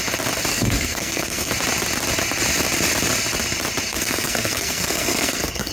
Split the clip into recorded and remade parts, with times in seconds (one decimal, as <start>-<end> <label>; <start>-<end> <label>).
0.0-0.5 recorded; 0.5-1.5 remade; 1.5-3.9 recorded; 3.9-5.7 remade